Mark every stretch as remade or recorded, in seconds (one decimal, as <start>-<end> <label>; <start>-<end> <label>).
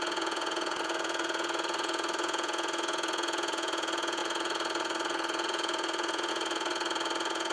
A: 0.0-7.5 remade